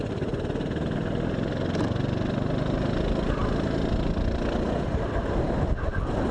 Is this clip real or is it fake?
real